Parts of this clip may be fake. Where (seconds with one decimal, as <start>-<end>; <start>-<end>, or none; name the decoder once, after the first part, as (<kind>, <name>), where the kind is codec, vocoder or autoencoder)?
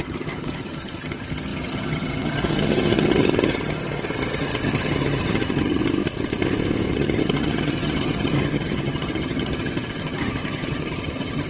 0.0-5.8 (vocoder, HiFi-GAN); 6.9-11.5